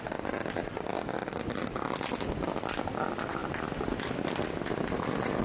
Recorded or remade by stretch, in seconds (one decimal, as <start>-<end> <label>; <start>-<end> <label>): 0.0-5.4 recorded